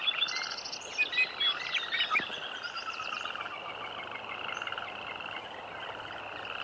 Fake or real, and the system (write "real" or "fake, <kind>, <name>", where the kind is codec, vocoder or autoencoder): real